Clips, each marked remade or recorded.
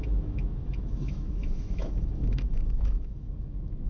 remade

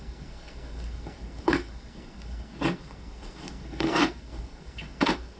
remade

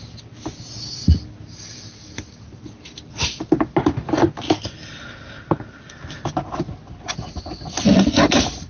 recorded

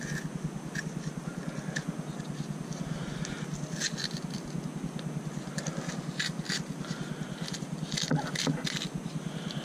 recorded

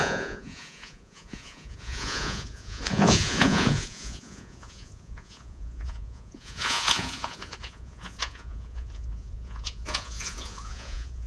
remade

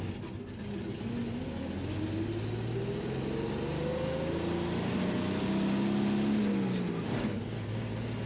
recorded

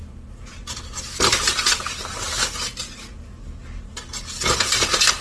recorded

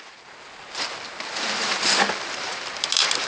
remade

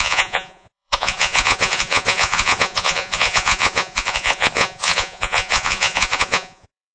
remade